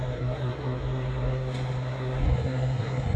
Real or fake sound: fake